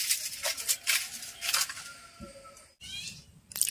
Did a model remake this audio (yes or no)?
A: no